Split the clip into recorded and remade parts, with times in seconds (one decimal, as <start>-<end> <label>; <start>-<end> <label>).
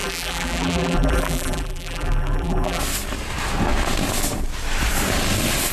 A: 0.0-2.8 remade; 2.8-5.7 recorded